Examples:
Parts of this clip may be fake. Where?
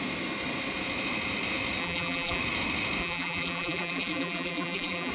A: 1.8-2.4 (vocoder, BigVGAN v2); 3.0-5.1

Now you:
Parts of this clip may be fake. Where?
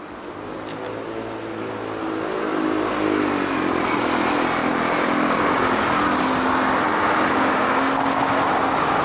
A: 4.6-5.5 (vocoder, BigVGAN v2)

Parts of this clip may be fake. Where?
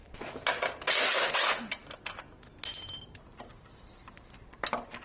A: none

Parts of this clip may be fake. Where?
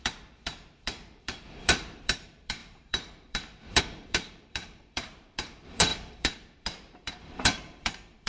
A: 0.0-8.3 (vocoder, BigVGAN v2)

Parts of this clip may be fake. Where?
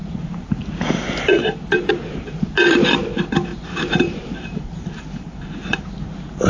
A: 0.0-0.5 (vocoder, BigVGAN v2); 1.3-1.9; 3.5-5.8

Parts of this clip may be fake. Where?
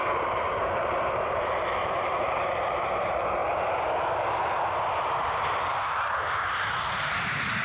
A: 0.0-3.4 (vocoder, BigVGAN v2); 6.7-7.6